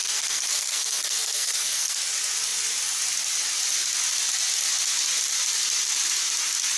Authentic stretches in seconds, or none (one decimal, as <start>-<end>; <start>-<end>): 2.0-6.8